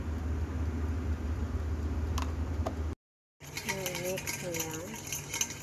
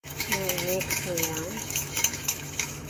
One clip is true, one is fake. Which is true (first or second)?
first